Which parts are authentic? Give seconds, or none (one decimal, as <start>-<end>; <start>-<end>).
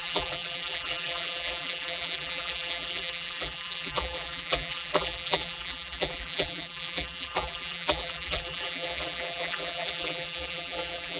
none